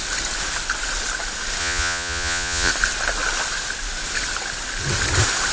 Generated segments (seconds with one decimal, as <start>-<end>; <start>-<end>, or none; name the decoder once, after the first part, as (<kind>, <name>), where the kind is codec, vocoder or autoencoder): 1.6-2.7 (vocoder, Vocos)